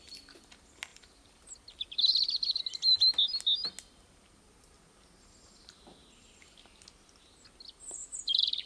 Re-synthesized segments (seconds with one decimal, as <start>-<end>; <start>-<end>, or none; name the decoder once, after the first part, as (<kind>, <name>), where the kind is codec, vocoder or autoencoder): 8.0-8.7 (vocoder, BigVGAN v2)